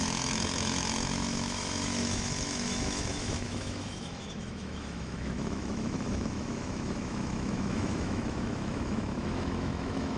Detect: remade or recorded remade